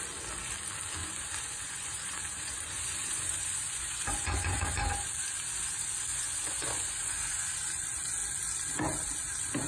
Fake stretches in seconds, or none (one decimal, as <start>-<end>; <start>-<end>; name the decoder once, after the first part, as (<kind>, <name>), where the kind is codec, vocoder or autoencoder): 1.0-4.9 (vocoder, Vocos); 6.1-7.5